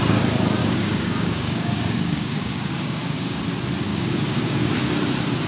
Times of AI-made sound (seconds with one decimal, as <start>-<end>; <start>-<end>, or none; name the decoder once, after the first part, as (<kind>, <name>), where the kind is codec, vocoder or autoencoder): 0.6-3.4 (codec, DAC); 3.9-4.7